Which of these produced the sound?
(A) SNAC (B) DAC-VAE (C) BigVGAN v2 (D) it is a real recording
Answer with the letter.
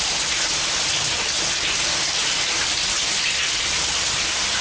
D